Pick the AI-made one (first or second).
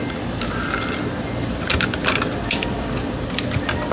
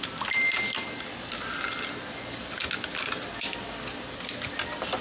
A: first